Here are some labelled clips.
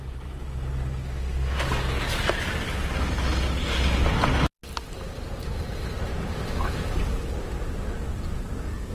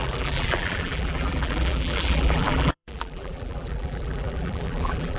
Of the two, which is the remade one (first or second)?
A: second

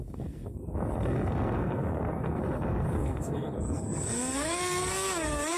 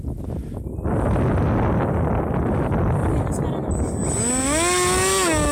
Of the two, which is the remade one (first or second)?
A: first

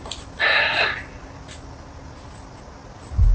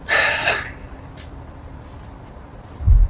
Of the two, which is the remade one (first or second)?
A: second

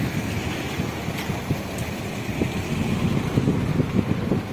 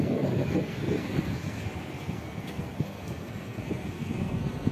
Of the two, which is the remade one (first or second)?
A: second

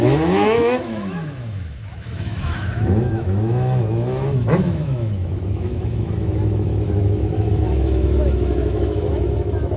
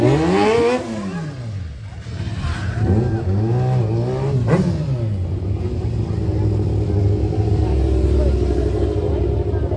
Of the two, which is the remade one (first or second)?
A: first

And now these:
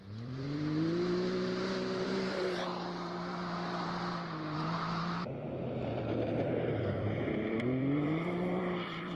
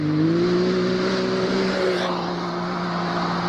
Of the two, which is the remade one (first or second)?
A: first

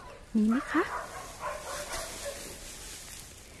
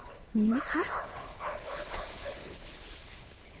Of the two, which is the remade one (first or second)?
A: second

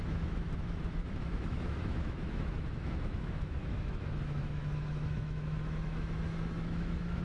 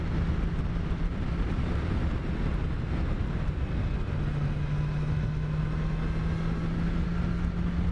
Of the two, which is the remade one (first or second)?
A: first